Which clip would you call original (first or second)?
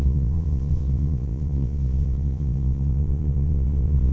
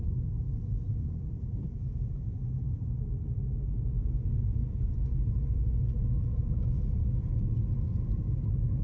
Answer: second